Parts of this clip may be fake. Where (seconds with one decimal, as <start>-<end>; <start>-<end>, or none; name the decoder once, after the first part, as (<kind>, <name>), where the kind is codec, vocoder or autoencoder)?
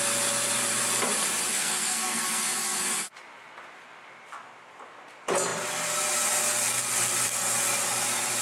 1.5-3.1 (codec, SNAC)